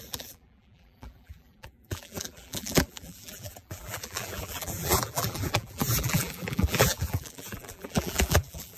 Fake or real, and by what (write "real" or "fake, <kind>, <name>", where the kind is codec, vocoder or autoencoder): fake, vocoder, BigVGAN v2